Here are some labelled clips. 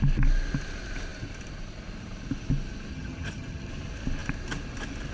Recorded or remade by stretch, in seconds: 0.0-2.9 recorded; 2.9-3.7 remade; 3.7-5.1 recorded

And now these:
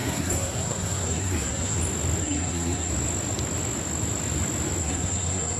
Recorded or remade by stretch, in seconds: 0.0-1.8 remade; 1.8-2.2 recorded; 2.2-2.9 remade; 2.9-4.8 recorded; 4.8-5.6 remade

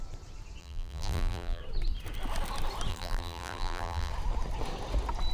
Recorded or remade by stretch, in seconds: 0.0-0.6 recorded; 0.6-1.6 remade; 1.6-2.9 recorded; 2.9-4.1 remade; 4.1-5.3 recorded

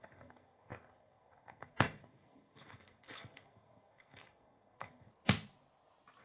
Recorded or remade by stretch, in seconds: 0.0-5.1 remade; 5.1-6.2 recorded